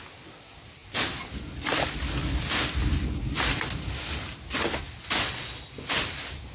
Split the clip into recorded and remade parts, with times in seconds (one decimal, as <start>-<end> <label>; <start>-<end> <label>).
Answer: 0.0-6.5 recorded